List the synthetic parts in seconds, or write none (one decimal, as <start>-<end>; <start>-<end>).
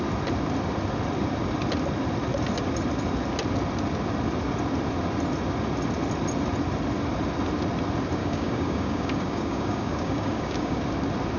8.2-10.8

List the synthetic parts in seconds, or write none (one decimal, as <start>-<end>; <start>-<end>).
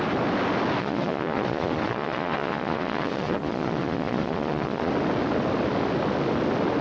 0.8-4.9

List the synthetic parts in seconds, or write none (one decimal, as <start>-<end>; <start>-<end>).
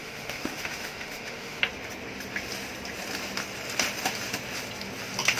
0.0-1.6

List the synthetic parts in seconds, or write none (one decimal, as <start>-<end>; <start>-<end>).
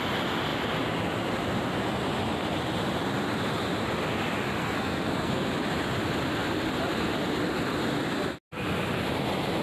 4.6-5.5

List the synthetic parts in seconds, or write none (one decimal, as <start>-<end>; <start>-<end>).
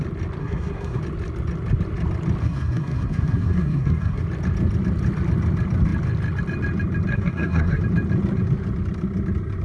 0.4-1.0; 2.4-4.2; 7.1-7.8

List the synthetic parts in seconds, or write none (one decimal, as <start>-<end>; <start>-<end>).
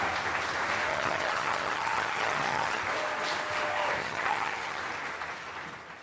0.9-2.8; 4.0-4.8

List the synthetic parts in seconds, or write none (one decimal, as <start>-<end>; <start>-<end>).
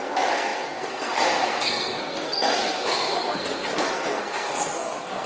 0.0-5.3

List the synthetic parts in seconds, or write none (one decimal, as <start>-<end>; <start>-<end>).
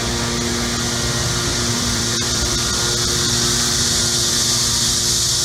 1.5-2.7